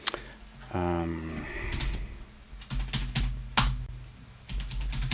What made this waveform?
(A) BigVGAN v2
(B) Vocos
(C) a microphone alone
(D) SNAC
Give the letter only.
C